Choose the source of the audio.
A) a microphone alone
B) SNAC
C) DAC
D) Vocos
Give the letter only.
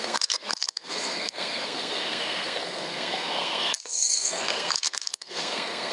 B